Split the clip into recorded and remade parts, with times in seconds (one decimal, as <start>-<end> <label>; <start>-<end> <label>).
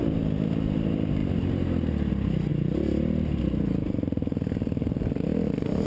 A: 0.0-5.9 recorded